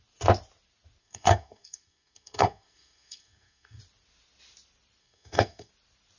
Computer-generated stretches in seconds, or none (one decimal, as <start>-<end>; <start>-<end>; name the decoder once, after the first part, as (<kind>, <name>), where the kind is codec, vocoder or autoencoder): 1.0-3.8 (codec, SNAC); 5.0-5.7